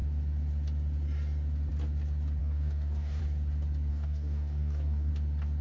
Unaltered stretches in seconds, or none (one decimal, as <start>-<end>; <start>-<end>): 0.0-2.4; 3.2-3.9; 5.1-5.6